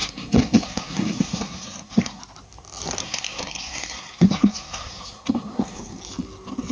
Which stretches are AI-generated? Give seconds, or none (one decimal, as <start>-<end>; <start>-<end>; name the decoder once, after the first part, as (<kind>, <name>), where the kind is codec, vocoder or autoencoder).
0.0-2.2 (codec, SNAC); 3.0-6.0